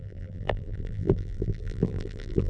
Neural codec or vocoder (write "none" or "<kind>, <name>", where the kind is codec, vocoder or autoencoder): vocoder, BigVGAN v2